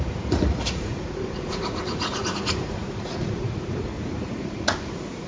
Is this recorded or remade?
remade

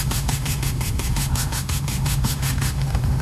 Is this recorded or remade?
remade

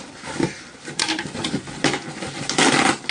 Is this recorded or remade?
recorded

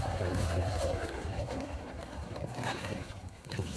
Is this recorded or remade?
remade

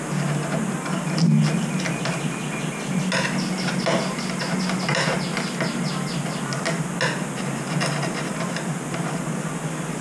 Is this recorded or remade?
recorded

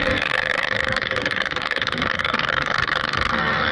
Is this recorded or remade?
remade